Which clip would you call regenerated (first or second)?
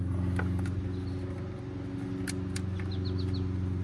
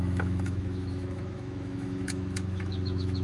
second